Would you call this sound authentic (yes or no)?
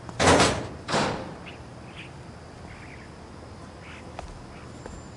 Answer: yes